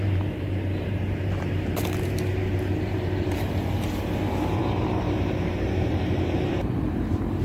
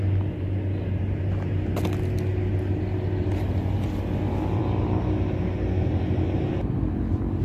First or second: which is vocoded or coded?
first